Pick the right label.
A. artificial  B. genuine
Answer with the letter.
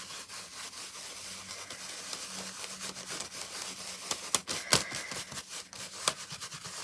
B